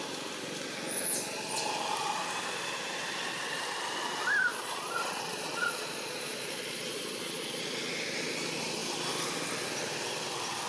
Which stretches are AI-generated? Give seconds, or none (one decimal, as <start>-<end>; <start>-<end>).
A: 4.5-7.6